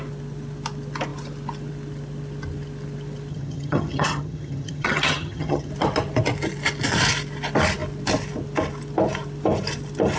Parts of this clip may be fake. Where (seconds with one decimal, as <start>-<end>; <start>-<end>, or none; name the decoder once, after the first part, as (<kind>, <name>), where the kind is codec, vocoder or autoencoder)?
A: 3.3-5.7 (vocoder, HiFi-GAN)